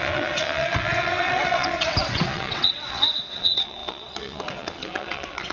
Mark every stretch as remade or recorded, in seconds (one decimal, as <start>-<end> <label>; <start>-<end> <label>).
0.0-5.5 remade